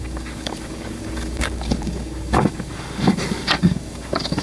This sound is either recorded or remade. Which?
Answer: remade